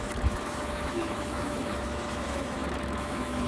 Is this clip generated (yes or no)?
yes